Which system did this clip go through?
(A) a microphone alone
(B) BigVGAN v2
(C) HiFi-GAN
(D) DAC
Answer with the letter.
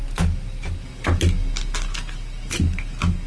A